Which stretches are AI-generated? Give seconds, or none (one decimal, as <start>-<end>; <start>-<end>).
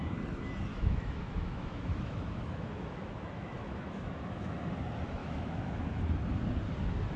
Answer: 0.7-4.7; 5.2-6.0